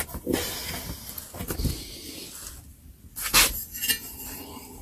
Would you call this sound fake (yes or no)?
no